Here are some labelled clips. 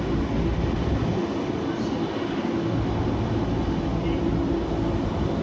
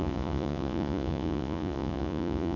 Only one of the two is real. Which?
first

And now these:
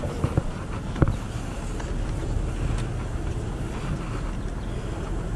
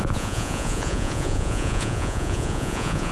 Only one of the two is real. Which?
first